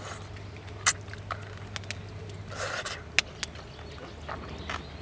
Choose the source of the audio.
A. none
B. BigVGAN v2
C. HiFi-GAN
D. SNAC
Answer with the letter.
A